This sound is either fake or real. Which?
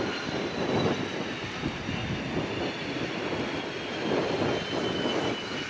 real